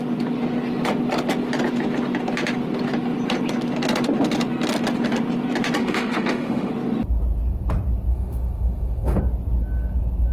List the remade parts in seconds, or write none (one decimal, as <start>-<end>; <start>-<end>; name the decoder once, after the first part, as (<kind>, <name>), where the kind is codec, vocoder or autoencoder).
5.8-6.7 (autoencoder, DAC-VAE); 8.1-9.2